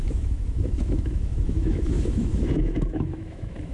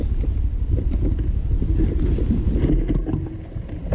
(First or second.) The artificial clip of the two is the first